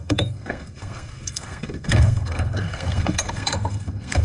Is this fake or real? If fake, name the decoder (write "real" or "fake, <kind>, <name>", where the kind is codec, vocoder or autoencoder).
fake, codec, SNAC